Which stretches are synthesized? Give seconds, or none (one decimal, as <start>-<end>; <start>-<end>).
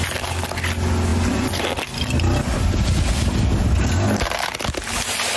none